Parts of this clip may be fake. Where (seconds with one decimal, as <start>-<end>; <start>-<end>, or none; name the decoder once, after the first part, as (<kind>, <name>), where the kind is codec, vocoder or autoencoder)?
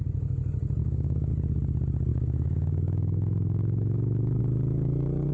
0.8-1.3 (autoencoder, DAC-VAE); 2.1-4.4